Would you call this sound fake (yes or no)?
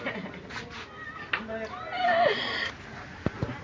no